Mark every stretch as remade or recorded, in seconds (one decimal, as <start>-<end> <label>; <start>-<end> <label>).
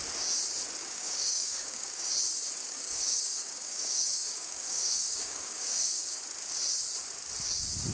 0.0-0.8 recorded; 0.8-2.1 remade; 2.1-2.6 recorded; 2.6-6.2 remade; 6.2-7.9 recorded